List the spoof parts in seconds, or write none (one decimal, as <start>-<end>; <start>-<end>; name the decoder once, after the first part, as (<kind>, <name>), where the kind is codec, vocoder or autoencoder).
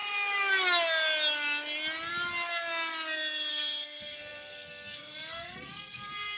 3.5-6.4 (codec, SNAC)